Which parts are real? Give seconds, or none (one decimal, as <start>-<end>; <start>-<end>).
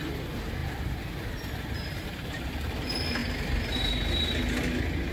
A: 0.0-0.6; 2.7-5.1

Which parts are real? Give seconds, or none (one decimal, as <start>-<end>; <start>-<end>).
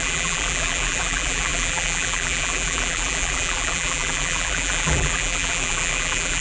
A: none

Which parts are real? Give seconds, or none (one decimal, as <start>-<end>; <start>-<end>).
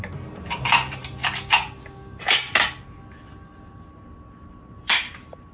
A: 1.2-4.5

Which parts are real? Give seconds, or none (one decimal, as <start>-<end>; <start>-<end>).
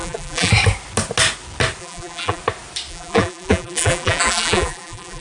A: 0.5-1.8; 2.4-2.9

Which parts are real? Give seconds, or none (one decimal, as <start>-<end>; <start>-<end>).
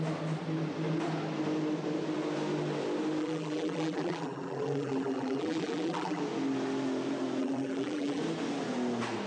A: 0.0-3.2; 6.2-7.4; 8.2-9.3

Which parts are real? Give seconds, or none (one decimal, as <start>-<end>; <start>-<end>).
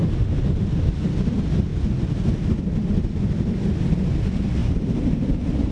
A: 0.0-4.6